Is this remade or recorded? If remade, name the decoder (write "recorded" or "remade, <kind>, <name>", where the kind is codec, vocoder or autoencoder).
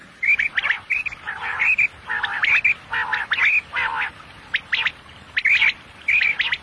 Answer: recorded